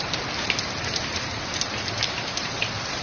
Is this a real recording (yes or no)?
no